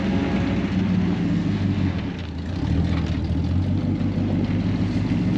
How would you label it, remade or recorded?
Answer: recorded